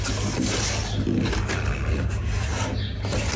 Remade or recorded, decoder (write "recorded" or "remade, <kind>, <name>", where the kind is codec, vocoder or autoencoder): recorded